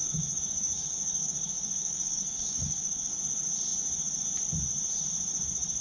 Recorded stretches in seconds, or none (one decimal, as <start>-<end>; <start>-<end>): 3.2-5.8